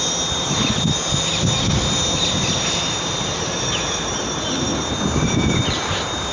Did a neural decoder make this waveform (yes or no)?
yes